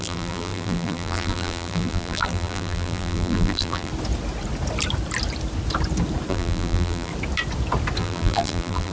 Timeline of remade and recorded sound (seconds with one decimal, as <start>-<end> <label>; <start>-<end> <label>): 0.0-3.9 remade; 3.9-6.3 recorded; 6.3-7.1 remade; 7.1-8.0 recorded; 8.0-8.9 remade